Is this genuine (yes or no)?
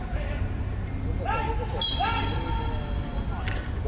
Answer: yes